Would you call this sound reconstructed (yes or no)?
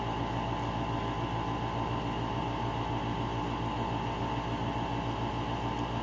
no